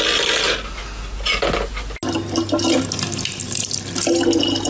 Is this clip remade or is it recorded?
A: recorded